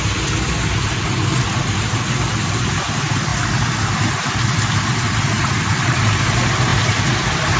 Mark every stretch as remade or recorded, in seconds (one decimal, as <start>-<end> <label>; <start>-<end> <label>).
0.0-7.6 recorded